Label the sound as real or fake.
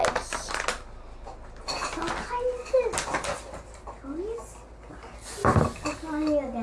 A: real